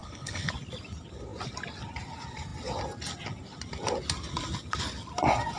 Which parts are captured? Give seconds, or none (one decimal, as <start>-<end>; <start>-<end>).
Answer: 0.5-5.6